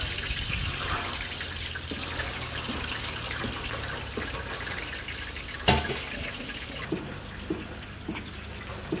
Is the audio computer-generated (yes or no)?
no